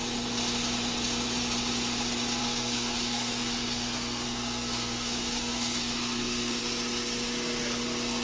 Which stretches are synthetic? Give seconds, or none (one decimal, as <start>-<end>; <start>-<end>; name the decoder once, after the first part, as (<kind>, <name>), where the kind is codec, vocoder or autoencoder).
2.4-6.6 (codec, SNAC)